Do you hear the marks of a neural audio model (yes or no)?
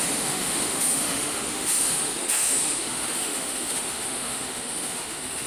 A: yes